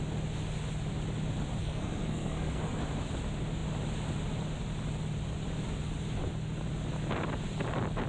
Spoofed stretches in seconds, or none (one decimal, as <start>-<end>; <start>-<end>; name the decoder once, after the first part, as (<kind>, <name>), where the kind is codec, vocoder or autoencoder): 1.6-2.8 (codec, SNAC)